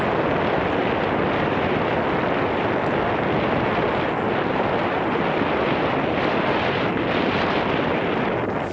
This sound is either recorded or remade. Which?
recorded